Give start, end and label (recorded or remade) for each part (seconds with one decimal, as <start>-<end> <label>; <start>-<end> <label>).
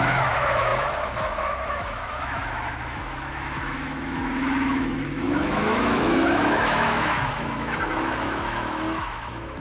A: 0.0-9.6 remade